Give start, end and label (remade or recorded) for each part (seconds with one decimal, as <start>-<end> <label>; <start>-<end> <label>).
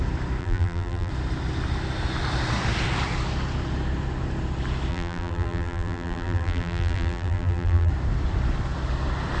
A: 0.0-0.4 recorded; 0.4-1.1 remade; 1.1-4.9 recorded; 4.9-7.9 remade; 7.9-9.4 recorded